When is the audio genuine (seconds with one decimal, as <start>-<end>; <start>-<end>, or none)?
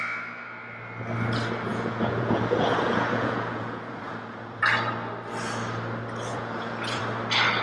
0.0-1.7; 4.6-6.3; 7.0-7.6